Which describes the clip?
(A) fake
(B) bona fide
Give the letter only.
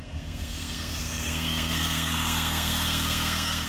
A